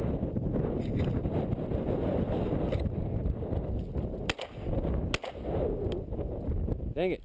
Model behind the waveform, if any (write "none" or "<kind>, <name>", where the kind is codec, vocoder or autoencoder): none